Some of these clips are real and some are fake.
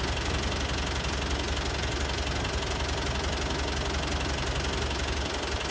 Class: real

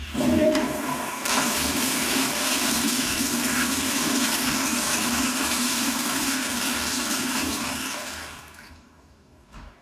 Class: fake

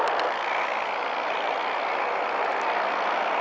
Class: real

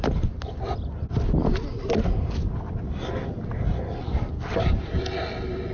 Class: real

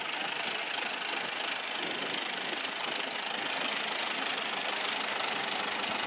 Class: real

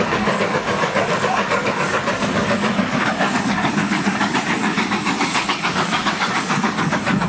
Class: fake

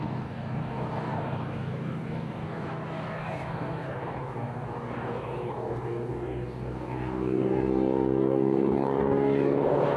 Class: fake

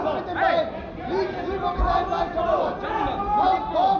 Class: real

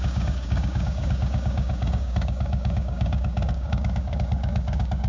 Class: fake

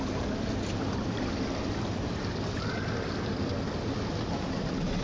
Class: real